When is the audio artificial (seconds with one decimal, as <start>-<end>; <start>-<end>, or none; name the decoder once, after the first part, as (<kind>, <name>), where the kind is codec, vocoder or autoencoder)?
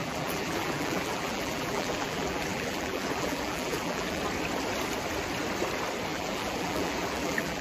0.0-4.2 (vocoder, BigVGAN v2); 6.1-7.6